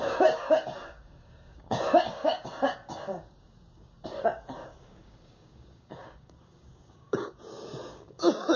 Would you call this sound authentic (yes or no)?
no